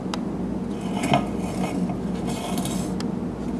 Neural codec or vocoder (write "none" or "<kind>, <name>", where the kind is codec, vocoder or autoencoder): none